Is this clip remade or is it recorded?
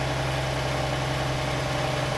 recorded